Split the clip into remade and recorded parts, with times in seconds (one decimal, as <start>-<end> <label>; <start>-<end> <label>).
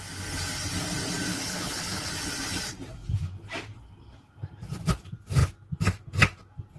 0.0-1.3 recorded; 1.3-2.1 remade; 2.1-6.8 recorded